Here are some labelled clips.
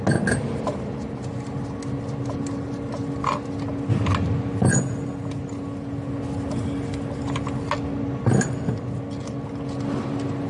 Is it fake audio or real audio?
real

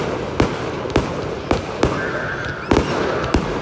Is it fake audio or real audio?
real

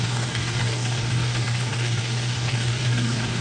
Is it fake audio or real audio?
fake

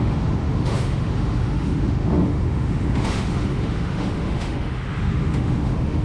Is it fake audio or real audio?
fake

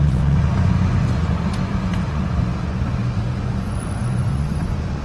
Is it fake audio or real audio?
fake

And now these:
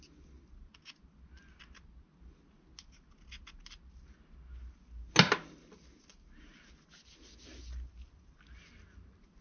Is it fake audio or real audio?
real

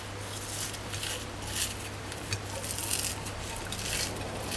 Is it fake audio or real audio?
real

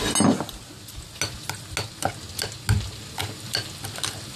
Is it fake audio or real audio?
real